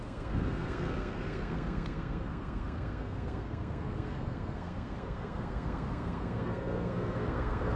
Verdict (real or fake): fake